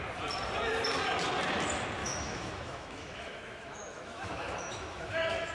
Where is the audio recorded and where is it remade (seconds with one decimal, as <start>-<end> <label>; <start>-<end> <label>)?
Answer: 0.0-2.0 recorded; 2.0-5.5 remade